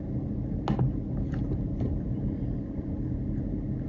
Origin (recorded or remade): recorded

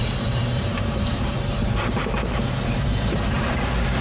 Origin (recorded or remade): remade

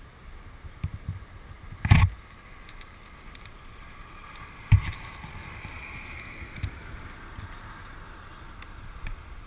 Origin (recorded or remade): recorded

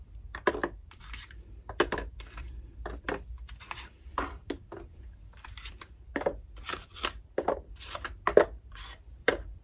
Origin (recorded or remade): remade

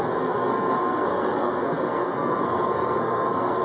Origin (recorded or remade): remade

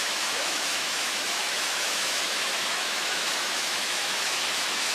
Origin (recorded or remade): remade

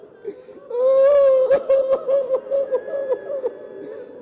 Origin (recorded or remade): recorded